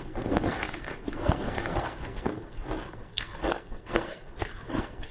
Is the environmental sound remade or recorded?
remade